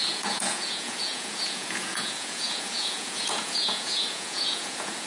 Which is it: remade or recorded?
remade